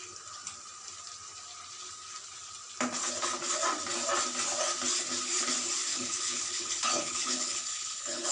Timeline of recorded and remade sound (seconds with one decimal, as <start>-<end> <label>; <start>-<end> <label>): 0.0-5.9 recorded; 5.9-8.3 remade